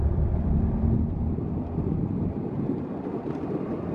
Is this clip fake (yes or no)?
yes